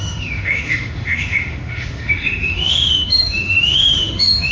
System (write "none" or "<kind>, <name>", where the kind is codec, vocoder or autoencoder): autoencoder, DAC-VAE